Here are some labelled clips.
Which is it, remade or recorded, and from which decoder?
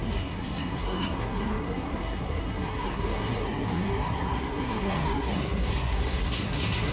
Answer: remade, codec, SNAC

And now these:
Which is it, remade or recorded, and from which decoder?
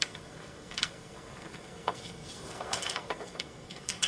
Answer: remade, codec, SNAC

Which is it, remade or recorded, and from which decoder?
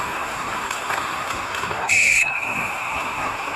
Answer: remade, codec, SNAC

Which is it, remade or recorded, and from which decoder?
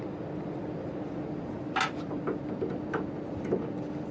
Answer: recorded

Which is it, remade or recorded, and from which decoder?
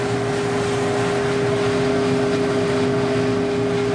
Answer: recorded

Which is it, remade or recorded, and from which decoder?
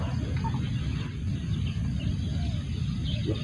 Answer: recorded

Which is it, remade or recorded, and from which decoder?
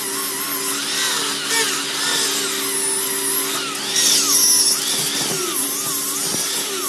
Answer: recorded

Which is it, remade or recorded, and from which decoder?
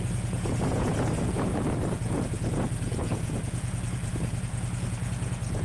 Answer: remade, vocoder, Vocos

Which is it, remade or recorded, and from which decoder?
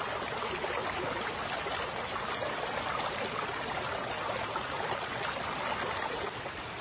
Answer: recorded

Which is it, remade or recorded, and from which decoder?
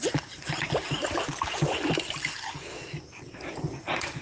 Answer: recorded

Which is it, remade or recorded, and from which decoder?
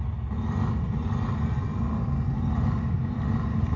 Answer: recorded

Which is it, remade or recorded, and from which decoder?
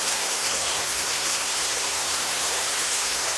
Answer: remade, codec, SNAC